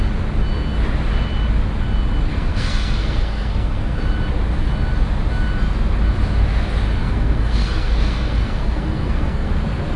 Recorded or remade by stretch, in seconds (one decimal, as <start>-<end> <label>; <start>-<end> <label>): 0.0-2.3 recorded; 2.3-4.0 remade; 4.0-7.0 recorded; 7.0-9.5 remade; 9.5-10.0 recorded